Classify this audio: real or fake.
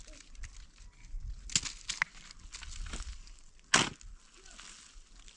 real